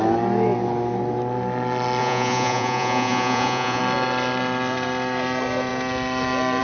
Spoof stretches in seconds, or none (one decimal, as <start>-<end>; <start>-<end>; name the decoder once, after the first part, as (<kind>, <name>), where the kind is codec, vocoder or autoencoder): 2.0-3.8 (vocoder, Vocos)